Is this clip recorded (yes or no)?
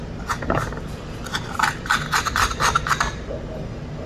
yes